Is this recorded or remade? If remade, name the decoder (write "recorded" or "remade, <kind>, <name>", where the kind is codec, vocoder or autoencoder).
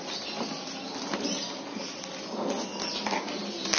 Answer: recorded